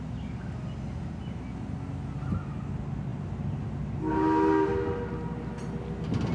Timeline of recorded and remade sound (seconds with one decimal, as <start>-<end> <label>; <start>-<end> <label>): 0.0-6.3 recorded

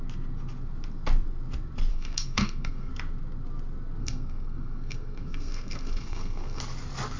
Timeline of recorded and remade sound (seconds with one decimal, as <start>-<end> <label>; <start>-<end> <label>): 0.0-1.9 recorded; 1.9-2.9 remade; 2.9-4.0 recorded; 4.0-6.6 remade; 6.6-7.2 recorded

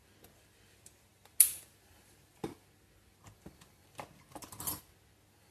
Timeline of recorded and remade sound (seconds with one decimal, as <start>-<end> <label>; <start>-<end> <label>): 0.0-5.5 recorded

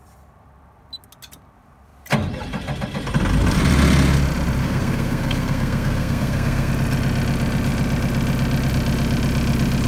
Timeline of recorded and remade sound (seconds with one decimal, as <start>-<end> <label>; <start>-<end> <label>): 0.0-4.6 recorded; 4.6-6.7 remade; 6.7-9.9 recorded

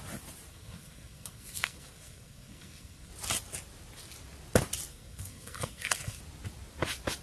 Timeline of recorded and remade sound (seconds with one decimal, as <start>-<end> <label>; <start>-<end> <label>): 0.0-0.5 recorded; 0.5-3.1 remade; 3.1-4.9 recorded; 4.9-6.2 remade; 6.2-7.2 recorded